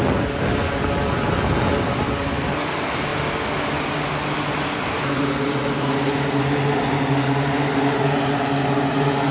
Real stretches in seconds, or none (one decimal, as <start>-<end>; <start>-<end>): 0.0-9.3

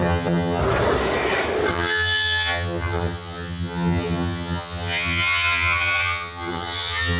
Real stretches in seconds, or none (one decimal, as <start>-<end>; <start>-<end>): 0.6-1.7

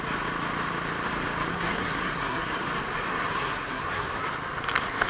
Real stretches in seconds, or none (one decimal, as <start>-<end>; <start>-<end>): 0.0-1.5; 2.6-3.1; 4.2-5.1

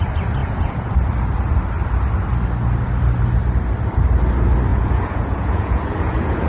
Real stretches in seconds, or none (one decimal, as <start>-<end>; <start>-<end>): 0.0-0.4; 0.9-4.7

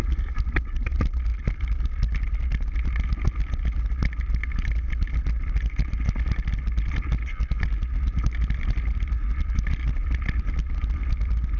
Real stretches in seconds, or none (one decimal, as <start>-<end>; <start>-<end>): 0.0-11.6

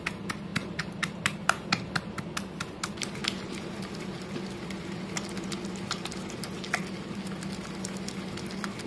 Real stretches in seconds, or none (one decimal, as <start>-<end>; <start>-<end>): 0.0-0.5; 2.2-8.9